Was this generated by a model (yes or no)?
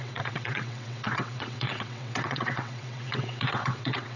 yes